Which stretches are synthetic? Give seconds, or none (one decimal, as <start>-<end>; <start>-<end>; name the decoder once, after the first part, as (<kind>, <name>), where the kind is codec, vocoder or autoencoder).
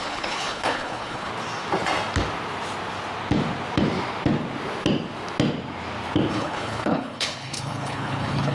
0.0-1.3 (codec, HILCodec); 6.3-8.5